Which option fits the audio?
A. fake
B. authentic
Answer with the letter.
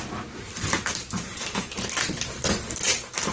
B